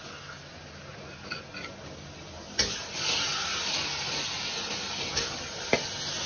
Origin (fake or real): real